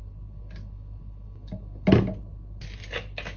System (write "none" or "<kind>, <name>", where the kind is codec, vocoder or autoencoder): none